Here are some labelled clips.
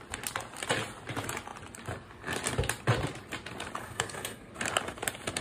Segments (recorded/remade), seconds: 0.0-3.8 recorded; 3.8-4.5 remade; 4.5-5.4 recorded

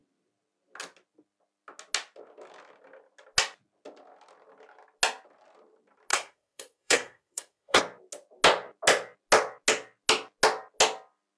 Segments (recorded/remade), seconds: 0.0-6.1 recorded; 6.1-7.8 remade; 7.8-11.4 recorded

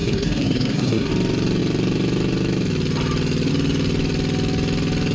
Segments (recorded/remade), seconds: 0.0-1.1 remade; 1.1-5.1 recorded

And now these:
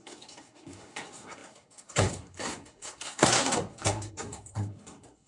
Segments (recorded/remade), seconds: 0.0-5.3 remade

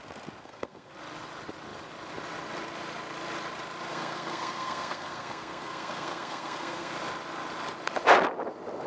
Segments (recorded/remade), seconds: 0.0-0.4 recorded; 0.4-0.9 remade; 0.9-3.9 recorded; 3.9-6.9 remade; 6.9-8.9 recorded

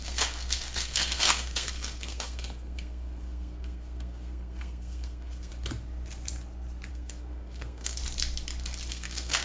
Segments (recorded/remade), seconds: 0.0-5.5 remade; 5.5-6.9 recorded; 6.9-8.0 remade; 8.0-8.9 recorded; 8.9-9.4 remade

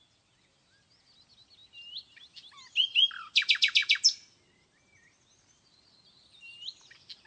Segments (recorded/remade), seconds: 0.0-7.3 recorded

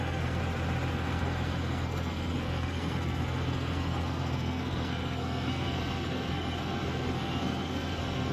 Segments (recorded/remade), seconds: 0.0-0.4 remade; 0.4-0.9 recorded; 0.9-8.3 remade